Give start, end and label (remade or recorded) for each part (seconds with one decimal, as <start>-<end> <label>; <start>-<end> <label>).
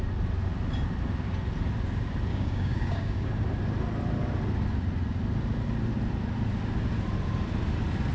0.0-2.3 recorded; 2.3-3.3 remade; 3.3-8.1 recorded